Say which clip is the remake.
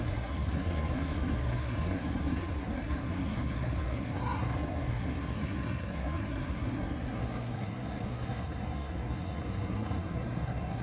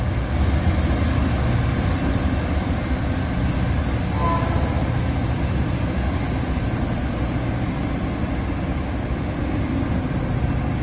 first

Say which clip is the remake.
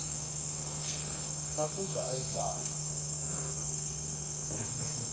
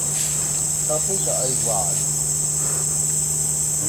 first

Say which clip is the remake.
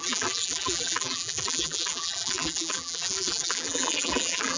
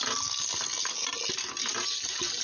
first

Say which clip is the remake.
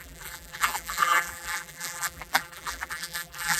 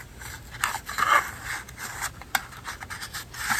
first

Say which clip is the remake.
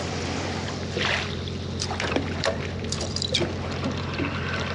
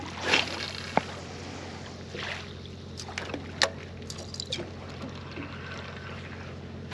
first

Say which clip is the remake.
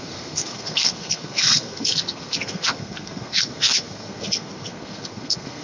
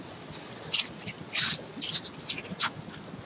first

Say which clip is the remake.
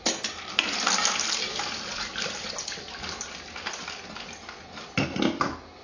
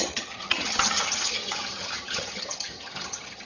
second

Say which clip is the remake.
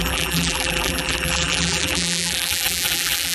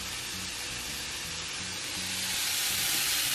first